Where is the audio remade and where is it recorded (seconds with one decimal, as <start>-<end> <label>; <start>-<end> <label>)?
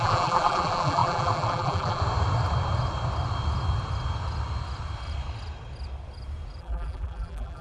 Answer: 0.0-2.0 remade; 2.0-6.6 recorded; 6.6-7.6 remade